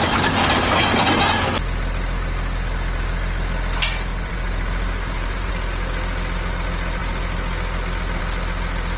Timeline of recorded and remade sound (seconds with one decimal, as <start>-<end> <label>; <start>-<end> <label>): 0.0-4.1 recorded; 4.1-5.5 remade; 5.5-9.0 recorded